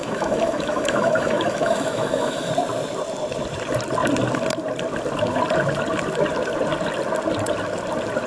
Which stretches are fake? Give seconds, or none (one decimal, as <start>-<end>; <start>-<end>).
0.0-2.5